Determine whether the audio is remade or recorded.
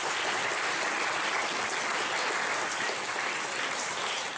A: recorded